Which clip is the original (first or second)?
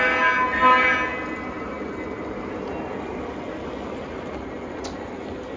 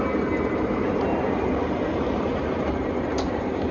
first